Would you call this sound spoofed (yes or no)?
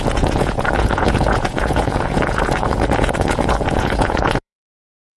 yes